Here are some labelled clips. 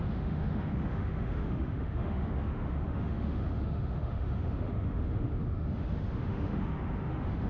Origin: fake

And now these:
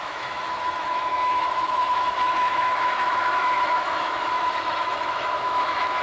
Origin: fake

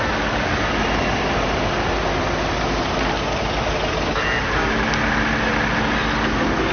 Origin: real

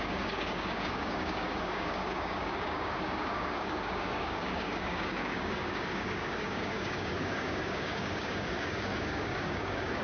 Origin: fake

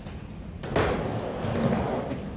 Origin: real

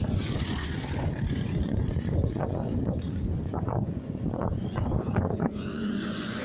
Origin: fake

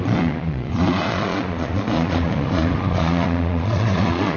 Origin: fake